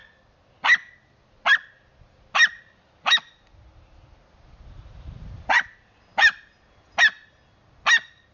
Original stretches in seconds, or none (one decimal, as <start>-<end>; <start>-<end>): 0.0-8.3

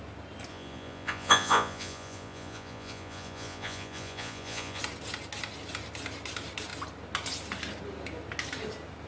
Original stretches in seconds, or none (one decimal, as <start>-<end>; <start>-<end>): 0.0-0.5; 4.8-9.1

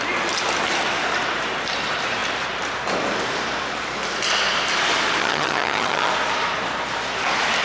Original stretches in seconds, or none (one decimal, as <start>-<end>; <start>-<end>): 0.0-5.2; 6.1-7.6

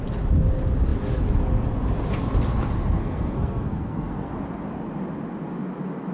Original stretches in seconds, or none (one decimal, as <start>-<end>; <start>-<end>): 0.0-3.0; 4.3-6.1

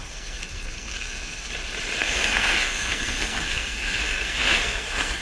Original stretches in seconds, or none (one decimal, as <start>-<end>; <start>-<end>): 1.5-2.0

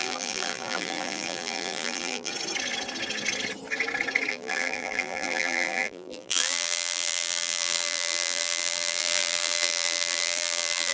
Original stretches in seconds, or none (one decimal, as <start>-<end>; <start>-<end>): 2.3-4.3